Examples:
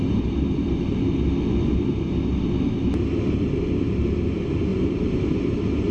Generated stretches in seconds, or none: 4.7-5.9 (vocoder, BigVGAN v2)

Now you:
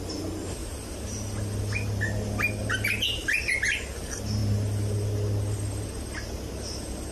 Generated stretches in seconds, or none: none

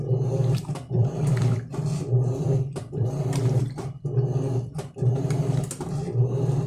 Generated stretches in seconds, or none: 0.6-4.0 (vocoder, BigVGAN v2)

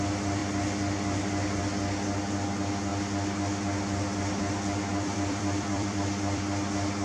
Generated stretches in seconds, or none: 4.9-6.4 (vocoder, BigVGAN v2)

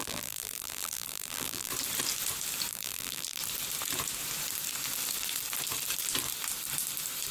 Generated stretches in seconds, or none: 0.0-1.7 (vocoder, BigVGAN v2); 2.7-3.4

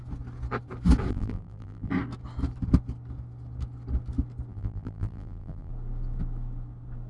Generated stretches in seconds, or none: 1.1-1.9 (vocoder, BigVGAN v2); 4.5-5.7

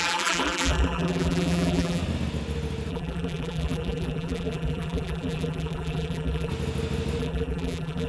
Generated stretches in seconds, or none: 0.0-2.0 (vocoder, BigVGAN v2); 2.9-6.5; 7.2-8.1